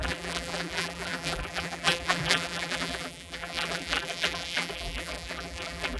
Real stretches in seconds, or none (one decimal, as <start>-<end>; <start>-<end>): none